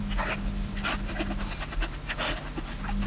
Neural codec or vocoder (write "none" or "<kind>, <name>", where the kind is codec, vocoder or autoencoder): none